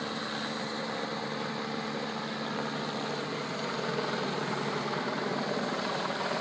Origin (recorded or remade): recorded